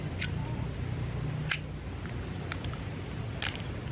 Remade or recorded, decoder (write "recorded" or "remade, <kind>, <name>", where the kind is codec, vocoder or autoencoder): recorded